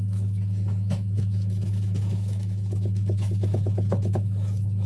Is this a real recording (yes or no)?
no